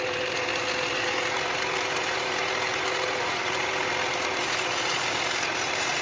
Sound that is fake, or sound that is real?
real